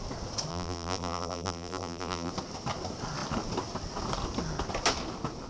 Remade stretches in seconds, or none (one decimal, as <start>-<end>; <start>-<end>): 0.5-2.3